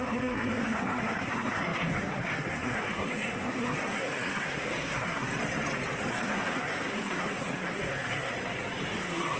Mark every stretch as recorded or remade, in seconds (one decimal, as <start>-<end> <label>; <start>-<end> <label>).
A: 0.0-5.3 remade; 5.3-6.1 recorded; 6.1-8.3 remade; 8.3-8.9 recorded; 8.9-9.4 remade